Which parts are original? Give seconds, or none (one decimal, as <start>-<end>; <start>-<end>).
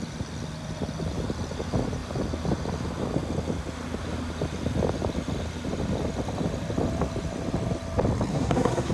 0.0-8.3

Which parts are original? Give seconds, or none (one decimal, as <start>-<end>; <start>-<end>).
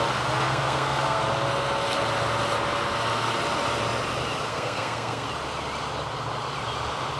0.0-0.5; 1.2-4.5; 5.3-7.2